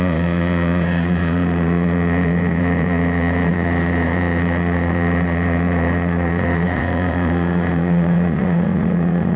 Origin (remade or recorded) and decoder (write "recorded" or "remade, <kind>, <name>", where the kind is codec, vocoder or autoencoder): remade, vocoder, Vocos